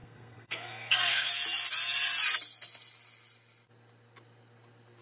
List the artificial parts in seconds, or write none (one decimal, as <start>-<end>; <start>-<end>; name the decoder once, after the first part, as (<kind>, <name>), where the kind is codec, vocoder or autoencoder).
0.0-1.3 (codec, SNAC)

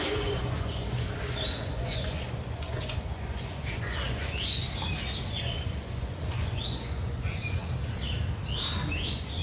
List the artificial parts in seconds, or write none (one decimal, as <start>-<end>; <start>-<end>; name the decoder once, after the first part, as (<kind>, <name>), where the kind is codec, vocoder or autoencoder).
0.0-4.6 (vocoder, Vocos); 5.3-7.6; 8.9-9.4

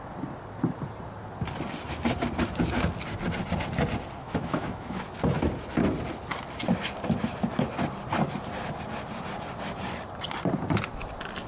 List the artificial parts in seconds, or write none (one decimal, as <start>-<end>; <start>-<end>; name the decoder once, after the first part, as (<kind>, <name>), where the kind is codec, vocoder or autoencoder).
4.2-5.1 (autoencoder, DAC-VAE)